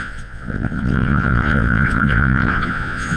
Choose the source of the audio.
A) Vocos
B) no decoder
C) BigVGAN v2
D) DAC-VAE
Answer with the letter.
A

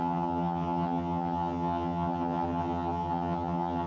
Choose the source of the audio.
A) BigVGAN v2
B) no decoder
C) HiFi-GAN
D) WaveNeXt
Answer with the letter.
C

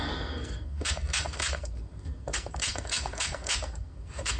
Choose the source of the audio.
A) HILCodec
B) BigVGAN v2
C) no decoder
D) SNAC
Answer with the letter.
D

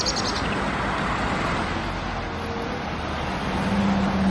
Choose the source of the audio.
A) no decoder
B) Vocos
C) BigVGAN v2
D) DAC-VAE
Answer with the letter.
A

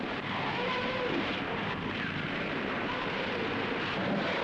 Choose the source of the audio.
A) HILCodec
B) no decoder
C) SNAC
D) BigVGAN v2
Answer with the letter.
D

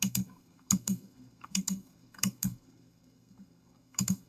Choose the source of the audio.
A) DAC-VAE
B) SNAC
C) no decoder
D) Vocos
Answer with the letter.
B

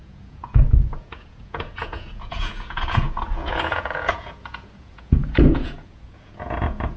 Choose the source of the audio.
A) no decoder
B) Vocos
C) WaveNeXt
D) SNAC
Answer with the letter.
B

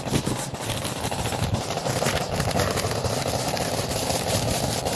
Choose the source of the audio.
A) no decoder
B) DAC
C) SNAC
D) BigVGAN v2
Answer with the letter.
A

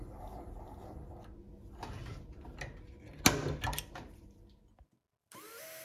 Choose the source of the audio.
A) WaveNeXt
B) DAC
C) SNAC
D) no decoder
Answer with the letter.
D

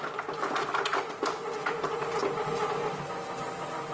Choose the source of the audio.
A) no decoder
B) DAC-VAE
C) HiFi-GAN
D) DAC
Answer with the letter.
A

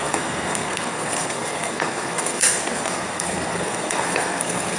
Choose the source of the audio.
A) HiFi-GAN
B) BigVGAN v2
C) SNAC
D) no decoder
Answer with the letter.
C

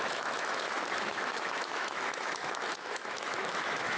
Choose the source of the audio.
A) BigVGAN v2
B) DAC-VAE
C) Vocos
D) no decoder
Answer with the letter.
B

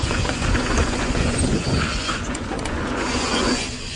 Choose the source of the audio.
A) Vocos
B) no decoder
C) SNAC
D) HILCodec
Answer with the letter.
A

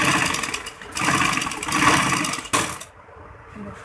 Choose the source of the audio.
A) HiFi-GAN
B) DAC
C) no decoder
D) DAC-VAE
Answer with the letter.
C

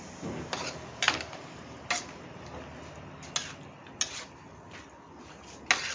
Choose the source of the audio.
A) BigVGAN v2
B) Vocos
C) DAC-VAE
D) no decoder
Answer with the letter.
D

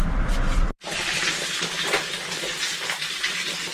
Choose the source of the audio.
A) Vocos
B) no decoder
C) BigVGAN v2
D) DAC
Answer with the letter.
C